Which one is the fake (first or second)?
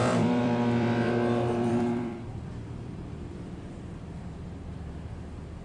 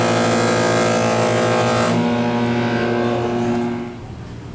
first